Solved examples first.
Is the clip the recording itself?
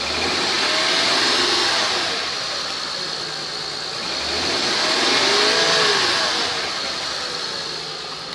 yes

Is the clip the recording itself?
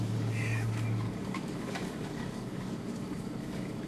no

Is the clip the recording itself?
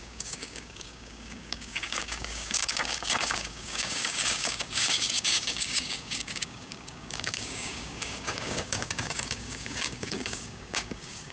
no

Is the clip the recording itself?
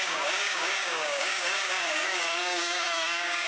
no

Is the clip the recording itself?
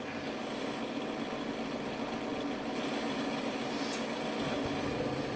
yes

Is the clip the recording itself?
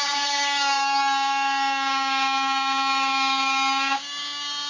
no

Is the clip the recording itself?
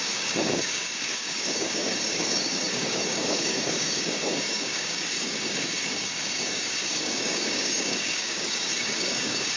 no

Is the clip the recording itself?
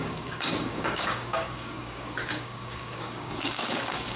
no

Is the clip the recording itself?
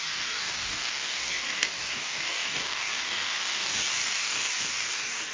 no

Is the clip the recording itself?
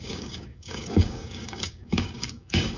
no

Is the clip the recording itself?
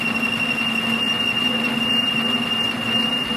yes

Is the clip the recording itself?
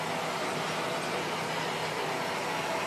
yes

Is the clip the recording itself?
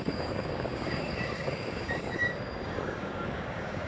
no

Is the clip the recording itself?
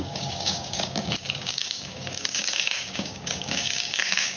no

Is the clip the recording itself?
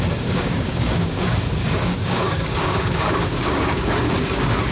no